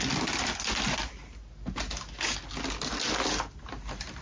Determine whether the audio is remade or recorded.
recorded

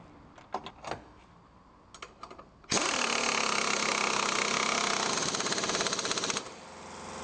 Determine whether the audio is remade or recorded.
recorded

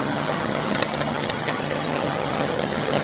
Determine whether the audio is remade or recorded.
remade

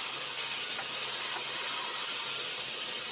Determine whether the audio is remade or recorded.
recorded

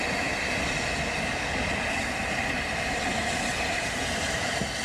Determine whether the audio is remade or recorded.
recorded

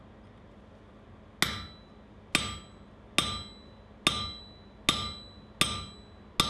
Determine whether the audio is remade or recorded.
recorded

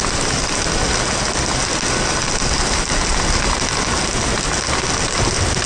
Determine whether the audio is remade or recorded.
recorded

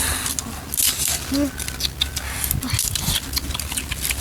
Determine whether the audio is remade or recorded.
recorded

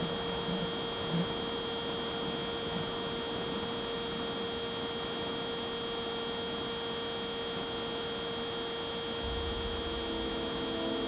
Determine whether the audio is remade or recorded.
recorded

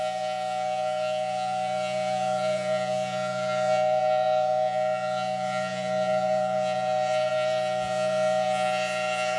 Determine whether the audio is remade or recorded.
remade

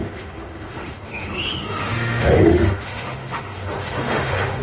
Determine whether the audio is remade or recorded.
remade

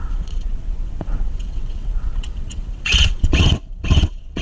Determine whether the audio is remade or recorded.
remade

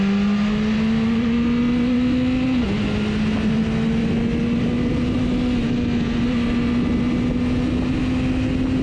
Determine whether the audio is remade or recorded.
recorded